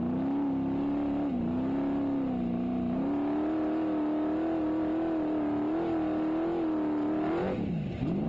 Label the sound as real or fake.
real